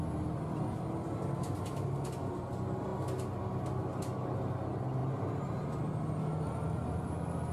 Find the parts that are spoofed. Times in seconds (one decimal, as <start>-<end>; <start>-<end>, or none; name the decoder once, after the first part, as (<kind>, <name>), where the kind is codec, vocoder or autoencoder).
none